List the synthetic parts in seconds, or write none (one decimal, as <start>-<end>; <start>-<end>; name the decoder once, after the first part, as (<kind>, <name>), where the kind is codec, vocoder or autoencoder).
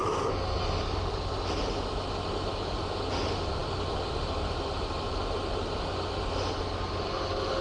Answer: none